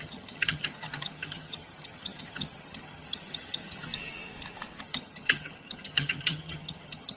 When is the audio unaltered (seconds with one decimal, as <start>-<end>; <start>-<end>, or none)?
3.9-4.8